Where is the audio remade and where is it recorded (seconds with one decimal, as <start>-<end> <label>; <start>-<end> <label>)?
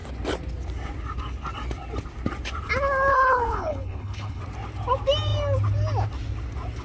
0.0-3.1 recorded; 3.1-4.4 remade; 4.4-6.8 recorded